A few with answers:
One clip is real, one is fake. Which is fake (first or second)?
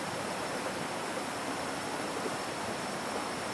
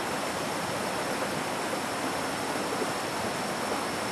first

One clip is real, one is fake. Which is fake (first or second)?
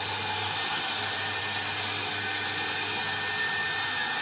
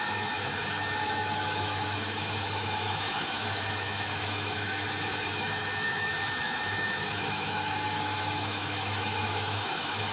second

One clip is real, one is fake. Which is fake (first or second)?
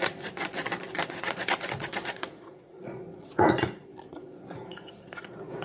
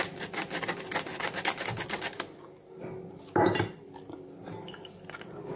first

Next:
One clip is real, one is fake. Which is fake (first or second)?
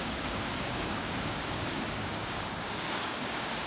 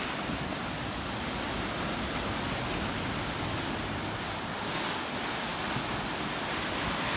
first